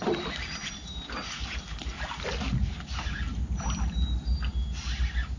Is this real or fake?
real